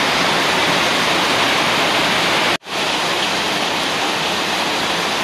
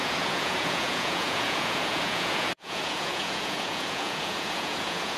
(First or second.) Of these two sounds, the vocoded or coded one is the second